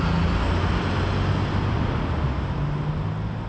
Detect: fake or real real